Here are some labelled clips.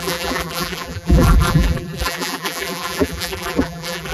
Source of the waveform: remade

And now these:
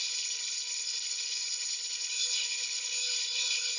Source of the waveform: remade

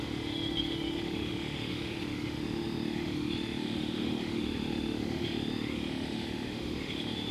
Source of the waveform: remade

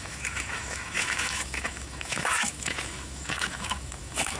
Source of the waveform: remade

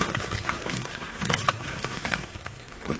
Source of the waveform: remade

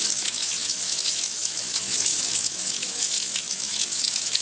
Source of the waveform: remade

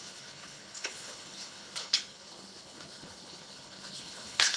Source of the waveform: remade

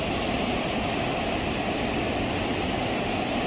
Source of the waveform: recorded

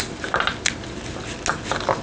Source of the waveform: recorded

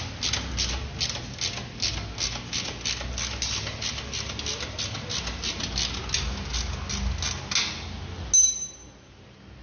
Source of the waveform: recorded